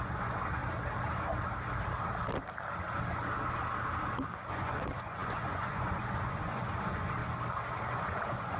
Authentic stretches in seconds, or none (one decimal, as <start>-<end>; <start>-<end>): 0.6-4.5; 7.2-7.9